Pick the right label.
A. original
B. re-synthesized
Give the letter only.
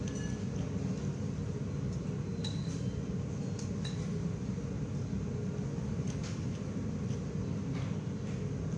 A